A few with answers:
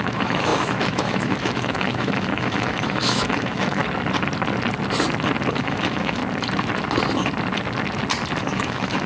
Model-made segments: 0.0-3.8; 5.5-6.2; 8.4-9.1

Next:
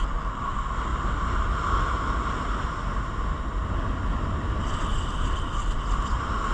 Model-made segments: none

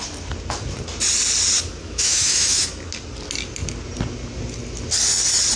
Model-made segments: 1.8-2.7

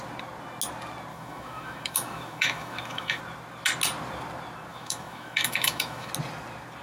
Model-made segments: 1.1-3.2; 4.7-6.1

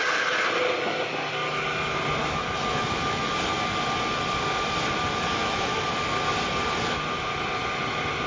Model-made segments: 2.2-3.3; 5.3-5.9

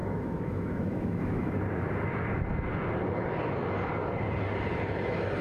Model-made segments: 0.0-1.6